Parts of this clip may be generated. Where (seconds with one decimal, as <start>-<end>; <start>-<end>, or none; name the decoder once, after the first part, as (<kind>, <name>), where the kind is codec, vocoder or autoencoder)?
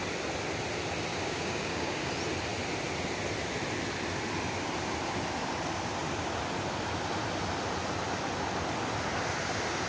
1.1-2.1 (codec, DAC)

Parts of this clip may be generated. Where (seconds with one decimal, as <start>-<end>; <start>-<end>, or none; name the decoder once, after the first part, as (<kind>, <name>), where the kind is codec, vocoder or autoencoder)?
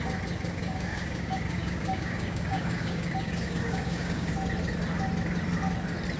0.6-4.3 (codec, DAC)